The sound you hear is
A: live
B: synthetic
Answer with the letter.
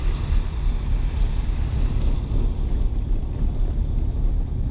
B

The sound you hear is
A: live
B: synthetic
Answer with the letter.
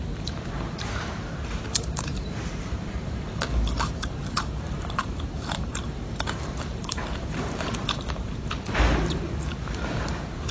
B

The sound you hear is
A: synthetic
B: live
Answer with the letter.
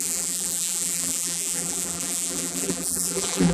A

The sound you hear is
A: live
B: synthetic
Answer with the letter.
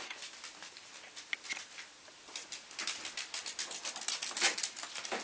A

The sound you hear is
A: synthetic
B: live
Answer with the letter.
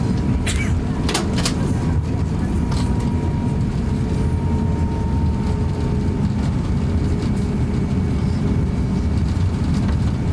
B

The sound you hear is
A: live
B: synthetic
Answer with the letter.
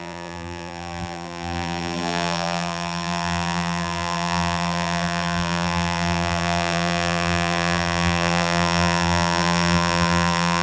B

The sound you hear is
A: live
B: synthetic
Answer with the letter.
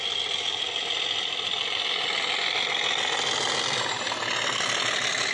A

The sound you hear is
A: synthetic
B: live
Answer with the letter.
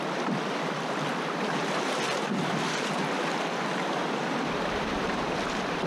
A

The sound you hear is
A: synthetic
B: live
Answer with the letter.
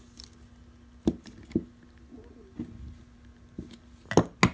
B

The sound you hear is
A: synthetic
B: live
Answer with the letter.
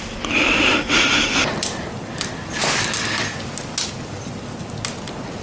B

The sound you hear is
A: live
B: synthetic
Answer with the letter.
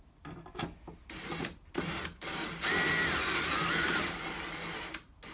A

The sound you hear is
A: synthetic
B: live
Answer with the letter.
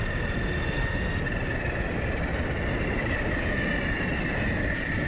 B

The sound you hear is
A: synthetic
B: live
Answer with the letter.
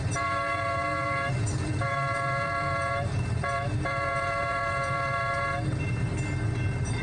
A